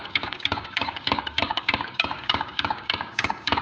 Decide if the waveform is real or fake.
fake